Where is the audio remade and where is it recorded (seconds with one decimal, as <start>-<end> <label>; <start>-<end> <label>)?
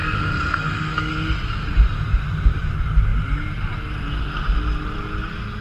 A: 0.0-1.1 remade; 1.1-5.6 recorded